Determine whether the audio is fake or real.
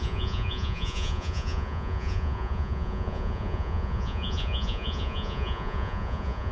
fake